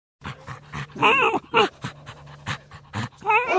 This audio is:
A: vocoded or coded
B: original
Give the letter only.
B